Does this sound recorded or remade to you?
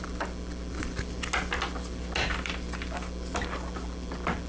recorded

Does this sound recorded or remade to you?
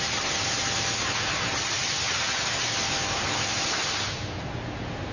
recorded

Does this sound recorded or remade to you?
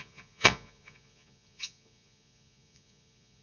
remade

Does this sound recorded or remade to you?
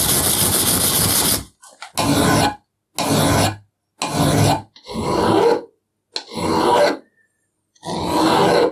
recorded